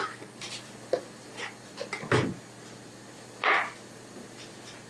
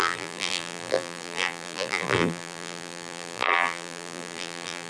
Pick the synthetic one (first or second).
second